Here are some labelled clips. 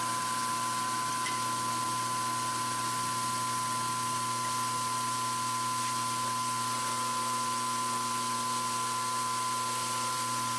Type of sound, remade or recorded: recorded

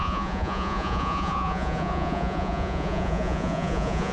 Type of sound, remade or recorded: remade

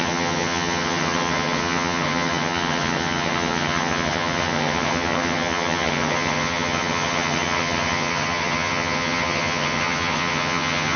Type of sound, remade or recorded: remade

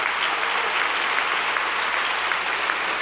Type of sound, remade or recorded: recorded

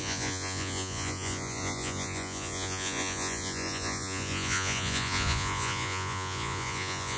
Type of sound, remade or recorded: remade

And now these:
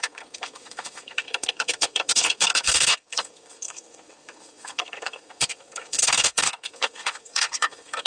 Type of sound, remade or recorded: remade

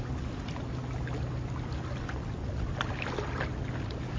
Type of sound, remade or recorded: recorded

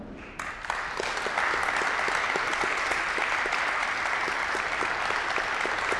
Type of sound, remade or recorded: recorded